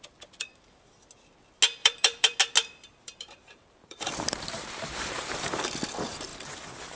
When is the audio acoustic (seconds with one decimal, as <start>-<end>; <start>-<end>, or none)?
0.0-1.8; 2.4-2.9; 5.5-7.0